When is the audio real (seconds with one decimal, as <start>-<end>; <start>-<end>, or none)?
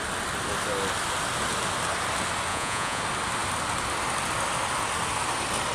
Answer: 0.0-2.5; 3.0-5.7